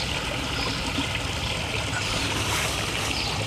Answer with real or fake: real